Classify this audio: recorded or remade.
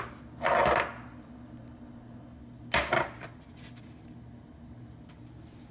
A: recorded